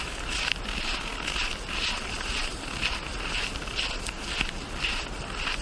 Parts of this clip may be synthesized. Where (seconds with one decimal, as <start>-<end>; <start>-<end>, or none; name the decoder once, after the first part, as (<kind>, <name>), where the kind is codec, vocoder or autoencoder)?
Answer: none